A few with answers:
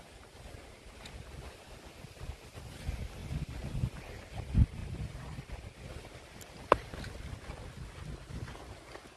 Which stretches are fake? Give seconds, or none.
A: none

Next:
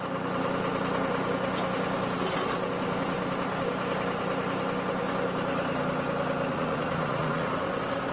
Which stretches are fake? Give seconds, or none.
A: 6.5-7.5 (vocoder, Vocos)

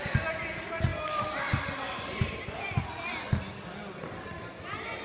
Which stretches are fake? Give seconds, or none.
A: none